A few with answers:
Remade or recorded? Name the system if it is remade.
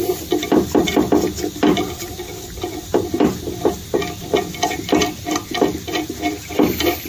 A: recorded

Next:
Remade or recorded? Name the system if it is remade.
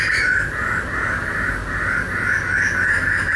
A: recorded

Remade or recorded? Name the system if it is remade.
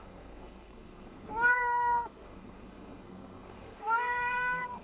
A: remade, codec, SNAC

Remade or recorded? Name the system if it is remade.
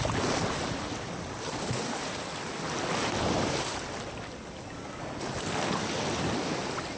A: recorded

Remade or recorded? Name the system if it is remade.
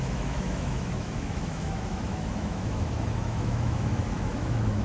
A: remade, autoencoder, DAC-VAE